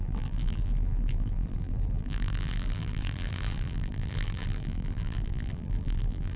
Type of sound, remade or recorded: remade